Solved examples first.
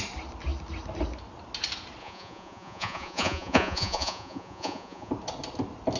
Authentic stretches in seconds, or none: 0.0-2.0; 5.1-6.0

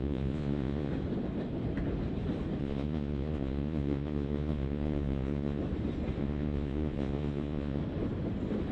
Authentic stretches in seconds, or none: 0.9-2.6; 5.6-6.2; 7.8-8.7

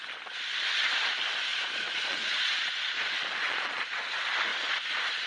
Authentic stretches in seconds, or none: 0.0-1.5; 4.0-5.3

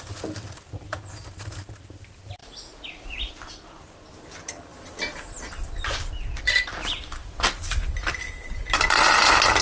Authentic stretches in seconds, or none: 0.0-2.4; 3.3-9.6